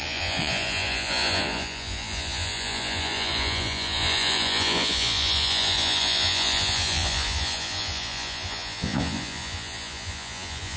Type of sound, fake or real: fake